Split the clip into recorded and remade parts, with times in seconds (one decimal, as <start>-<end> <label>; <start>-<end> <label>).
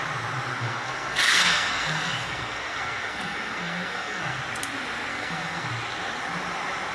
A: 0.0-0.5 recorded; 0.5-4.4 remade; 4.4-5.1 recorded; 5.1-5.7 remade; 5.7-6.9 recorded